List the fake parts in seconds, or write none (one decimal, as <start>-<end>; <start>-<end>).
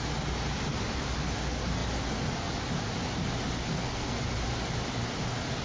3.7-4.2